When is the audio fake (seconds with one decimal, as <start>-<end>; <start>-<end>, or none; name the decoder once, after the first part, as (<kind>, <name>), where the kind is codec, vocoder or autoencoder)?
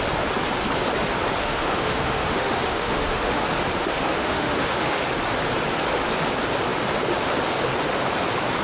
1.4-3.4 (autoencoder, DAC-VAE); 3.8-5.0